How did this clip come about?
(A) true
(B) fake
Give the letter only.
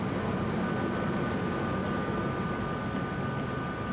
A